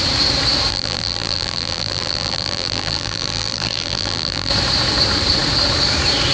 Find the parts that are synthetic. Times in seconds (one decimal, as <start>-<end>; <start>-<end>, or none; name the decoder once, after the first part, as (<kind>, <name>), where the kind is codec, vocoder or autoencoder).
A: 0.7-4.5 (vocoder, BigVGAN v2)